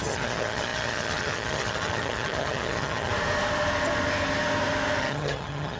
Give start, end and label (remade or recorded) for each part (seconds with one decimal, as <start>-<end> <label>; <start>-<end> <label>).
0.0-3.1 remade; 3.1-5.0 recorded; 5.0-5.8 remade